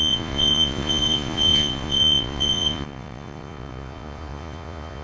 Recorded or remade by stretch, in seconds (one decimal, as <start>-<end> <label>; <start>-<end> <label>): 0.0-5.0 remade